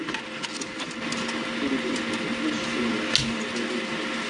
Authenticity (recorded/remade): recorded